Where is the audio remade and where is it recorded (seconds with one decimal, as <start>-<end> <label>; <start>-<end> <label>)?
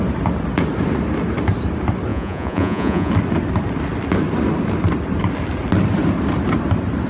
0.0-2.1 recorded; 2.1-3.1 remade; 3.1-7.1 recorded